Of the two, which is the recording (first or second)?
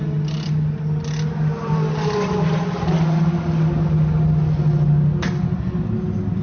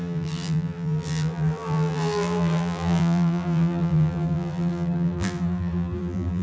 first